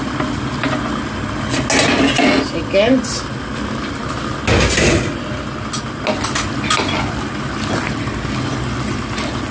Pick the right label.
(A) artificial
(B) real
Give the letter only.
B